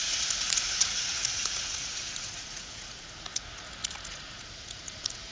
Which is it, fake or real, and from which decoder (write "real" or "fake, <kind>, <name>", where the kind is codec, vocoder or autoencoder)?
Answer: fake, vocoder, Vocos